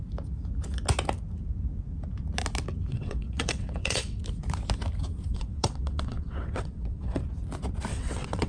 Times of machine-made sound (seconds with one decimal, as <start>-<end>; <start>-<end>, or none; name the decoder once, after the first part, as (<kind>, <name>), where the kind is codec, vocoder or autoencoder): 2.9-4.2 (vocoder, WaveNeXt); 5.3-7.2; 7.9-8.5